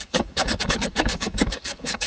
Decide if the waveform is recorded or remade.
remade